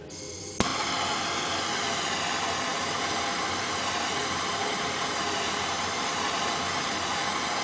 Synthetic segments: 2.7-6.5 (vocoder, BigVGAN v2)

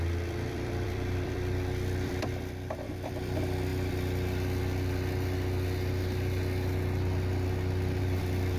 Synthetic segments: 0.0-3.7 (vocoder, BigVGAN v2); 8.0-8.6

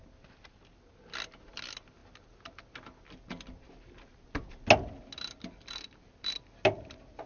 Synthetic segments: none

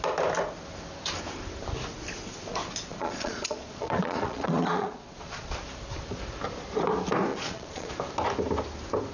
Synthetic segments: 2.9-5.5 (vocoder, Vocos); 7.3-7.9

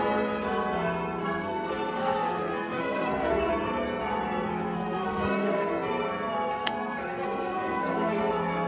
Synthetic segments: 1.2-3.5 (codec, SNAC); 4.5-5.7; 6.5-8.2

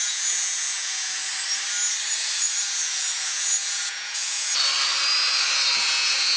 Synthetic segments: 0.0-1.2 (vocoder, Vocos); 2.1-4.5; 5.8-6.4

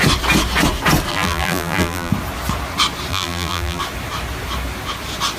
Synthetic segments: 1.1-2.1 (vocoder, BigVGAN v2); 3.1-3.8

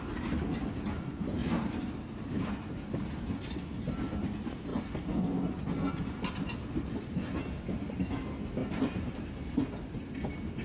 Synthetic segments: 1.4-2.4 (vocoder, BigVGAN v2); 8.6-9.3